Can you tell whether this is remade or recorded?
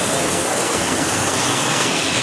remade